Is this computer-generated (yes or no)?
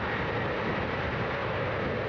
no